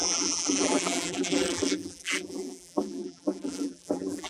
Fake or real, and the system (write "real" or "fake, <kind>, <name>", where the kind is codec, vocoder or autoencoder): fake, vocoder, BigVGAN v2